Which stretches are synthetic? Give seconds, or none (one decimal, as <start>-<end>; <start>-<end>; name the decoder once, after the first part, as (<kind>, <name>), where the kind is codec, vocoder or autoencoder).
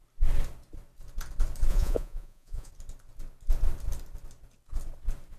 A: 1.7-2.7 (vocoder, Vocos)